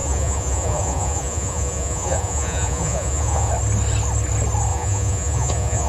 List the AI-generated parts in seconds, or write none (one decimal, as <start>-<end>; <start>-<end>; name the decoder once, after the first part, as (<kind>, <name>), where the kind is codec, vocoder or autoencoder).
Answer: 0.0-3.5 (vocoder, Vocos); 4.7-5.9